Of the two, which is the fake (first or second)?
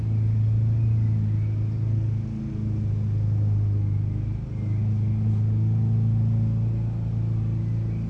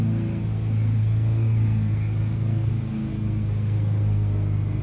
second